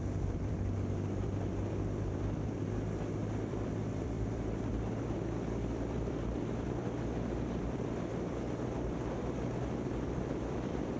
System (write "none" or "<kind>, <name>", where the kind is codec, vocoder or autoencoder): vocoder, BigVGAN v2